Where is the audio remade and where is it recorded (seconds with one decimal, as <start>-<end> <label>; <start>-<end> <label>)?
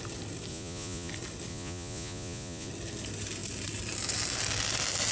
0.0-0.5 recorded; 0.5-1.1 remade; 1.1-1.5 recorded; 1.5-2.7 remade; 2.7-5.1 recorded